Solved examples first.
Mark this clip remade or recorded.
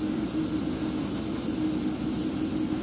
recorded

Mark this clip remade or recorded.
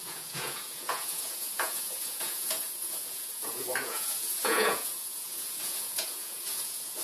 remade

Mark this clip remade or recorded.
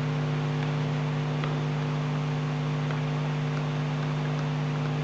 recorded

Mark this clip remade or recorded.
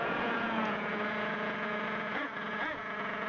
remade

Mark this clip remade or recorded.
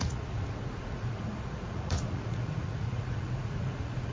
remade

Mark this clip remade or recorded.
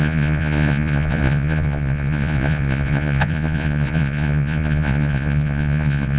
remade